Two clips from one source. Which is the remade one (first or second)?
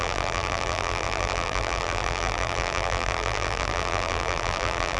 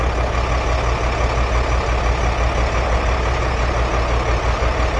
first